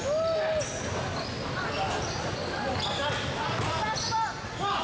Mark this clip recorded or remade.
recorded